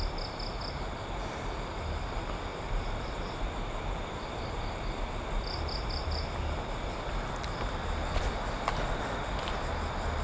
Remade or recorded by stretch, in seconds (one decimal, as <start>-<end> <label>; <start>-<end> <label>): 0.0-2.5 recorded; 2.5-7.3 remade; 7.3-10.2 recorded